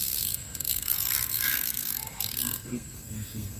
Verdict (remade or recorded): remade